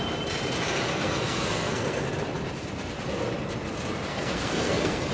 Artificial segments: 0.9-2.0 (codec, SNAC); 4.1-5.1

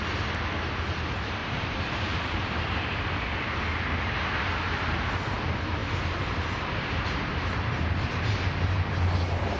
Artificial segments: 1.4-2.8 (vocoder, BigVGAN v2); 3.7-4.7; 5.8-8.9